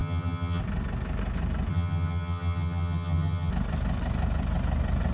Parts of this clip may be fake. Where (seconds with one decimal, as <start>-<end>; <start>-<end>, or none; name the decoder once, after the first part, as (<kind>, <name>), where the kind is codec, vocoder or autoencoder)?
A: 0.0-0.6 (vocoder, HiFi-GAN); 1.7-3.5